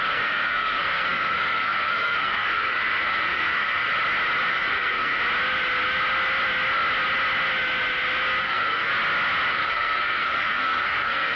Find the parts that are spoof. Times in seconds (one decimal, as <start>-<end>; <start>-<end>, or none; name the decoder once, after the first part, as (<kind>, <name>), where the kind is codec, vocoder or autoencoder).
0.0-3.9 (codec, SNAC); 4.5-5.2; 8.4-8.9; 9.5-11.4

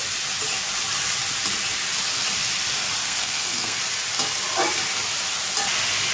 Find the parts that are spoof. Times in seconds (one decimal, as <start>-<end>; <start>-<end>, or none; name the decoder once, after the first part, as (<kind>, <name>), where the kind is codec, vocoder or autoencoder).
3.0-3.8 (codec, SNAC)